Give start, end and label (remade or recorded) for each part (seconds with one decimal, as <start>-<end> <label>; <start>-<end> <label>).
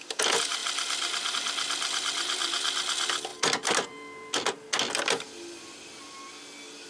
0.0-6.9 recorded